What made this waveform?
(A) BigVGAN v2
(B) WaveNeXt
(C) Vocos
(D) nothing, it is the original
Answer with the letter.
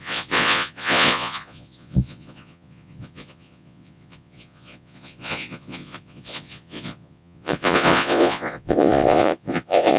C